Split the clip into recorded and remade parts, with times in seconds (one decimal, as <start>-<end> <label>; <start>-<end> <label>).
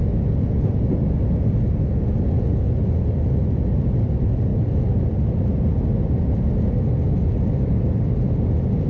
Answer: 0.0-8.9 recorded